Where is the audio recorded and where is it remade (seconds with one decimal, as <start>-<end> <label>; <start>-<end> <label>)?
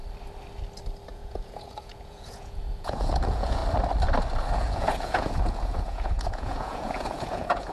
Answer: 0.0-1.1 recorded; 1.1-3.6 remade; 3.6-4.5 recorded; 4.5-7.7 remade